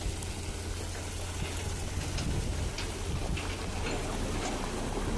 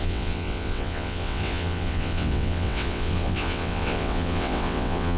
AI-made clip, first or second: second